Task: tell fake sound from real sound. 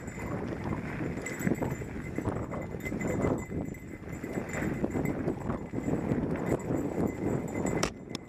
real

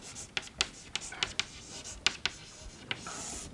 real